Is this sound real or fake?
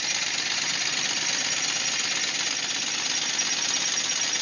real